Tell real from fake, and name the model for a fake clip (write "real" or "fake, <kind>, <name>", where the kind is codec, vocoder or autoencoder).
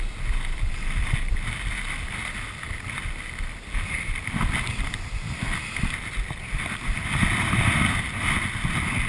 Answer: real